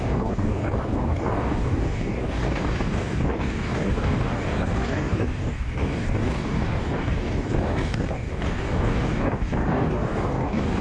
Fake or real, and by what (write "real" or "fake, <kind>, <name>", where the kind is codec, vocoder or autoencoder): fake, codec, DAC